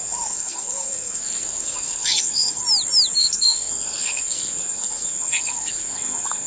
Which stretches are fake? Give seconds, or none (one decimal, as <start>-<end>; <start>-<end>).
0.0-2.6; 3.2-6.5